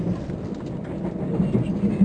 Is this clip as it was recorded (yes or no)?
yes